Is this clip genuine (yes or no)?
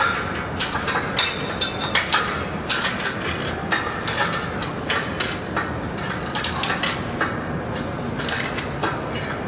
yes